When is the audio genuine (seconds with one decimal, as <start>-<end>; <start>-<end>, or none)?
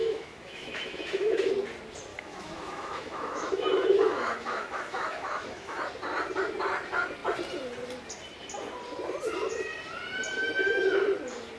1.5-2.1; 5.8-11.6